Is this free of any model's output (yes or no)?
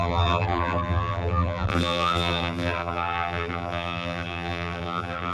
no